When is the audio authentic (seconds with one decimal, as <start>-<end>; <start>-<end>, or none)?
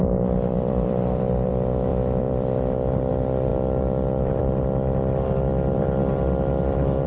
1.5-1.9; 3.1-7.1